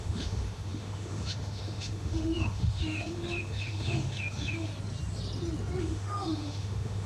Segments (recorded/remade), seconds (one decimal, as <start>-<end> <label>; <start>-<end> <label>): 0.0-4.7 remade; 4.7-5.8 recorded; 5.8-7.1 remade